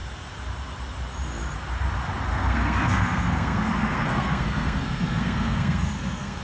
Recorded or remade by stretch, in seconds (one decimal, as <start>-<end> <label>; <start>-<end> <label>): 0.0-2.3 recorded; 2.3-6.4 remade